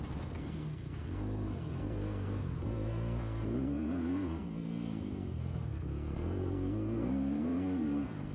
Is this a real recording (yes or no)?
no